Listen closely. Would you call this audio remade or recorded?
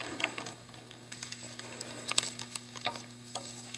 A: remade